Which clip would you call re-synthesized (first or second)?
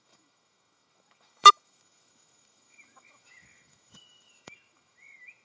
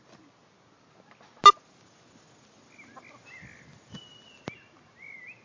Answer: first